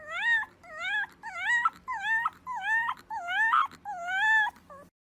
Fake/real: real